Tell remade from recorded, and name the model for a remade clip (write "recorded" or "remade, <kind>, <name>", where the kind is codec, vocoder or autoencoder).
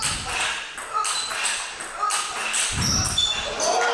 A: recorded